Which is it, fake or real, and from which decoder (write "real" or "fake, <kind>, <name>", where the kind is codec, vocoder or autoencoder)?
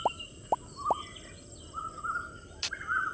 real